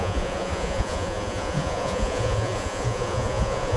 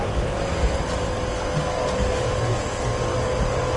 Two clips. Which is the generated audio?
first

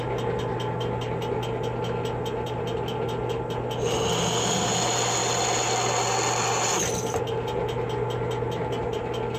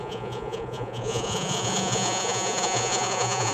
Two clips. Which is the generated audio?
second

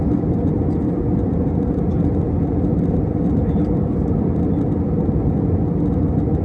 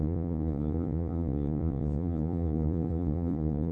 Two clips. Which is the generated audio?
second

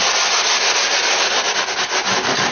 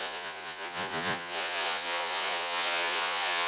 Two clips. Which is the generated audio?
second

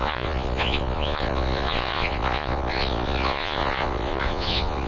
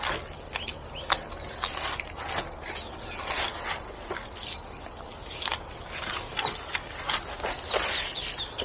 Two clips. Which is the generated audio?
first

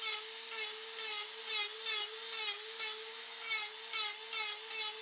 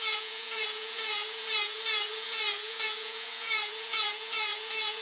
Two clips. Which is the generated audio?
second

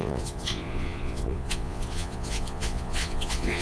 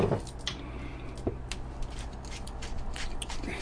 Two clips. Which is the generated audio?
first